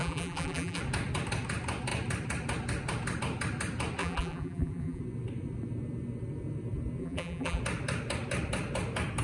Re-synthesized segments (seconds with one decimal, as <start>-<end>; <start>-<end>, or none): 0.0-0.8; 4.0-5.0; 7.0-7.6